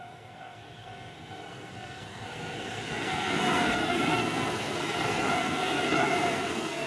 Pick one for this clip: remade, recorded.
remade